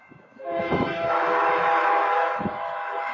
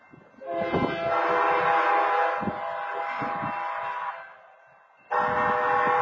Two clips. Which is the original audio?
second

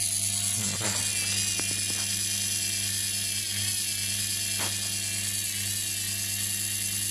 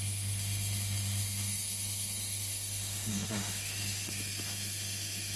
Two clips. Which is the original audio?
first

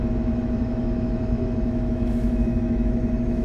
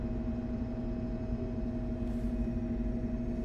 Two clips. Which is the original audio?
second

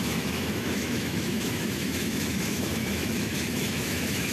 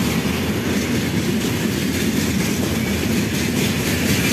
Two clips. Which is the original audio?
second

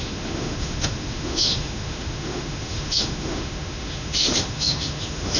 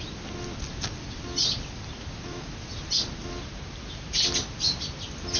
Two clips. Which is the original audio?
second